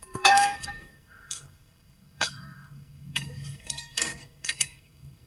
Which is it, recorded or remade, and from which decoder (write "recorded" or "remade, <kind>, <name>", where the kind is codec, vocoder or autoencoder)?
remade, codec, SNAC